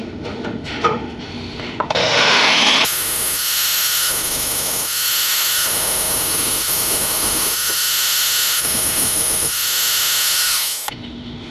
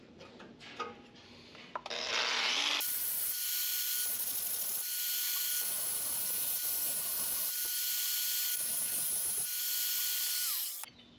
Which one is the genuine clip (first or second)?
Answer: second